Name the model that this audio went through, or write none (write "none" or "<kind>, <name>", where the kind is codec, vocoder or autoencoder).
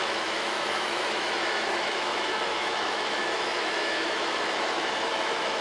autoencoder, DAC-VAE